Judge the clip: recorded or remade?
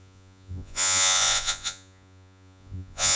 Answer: remade